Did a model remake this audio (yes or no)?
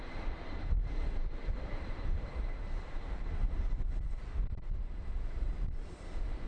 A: yes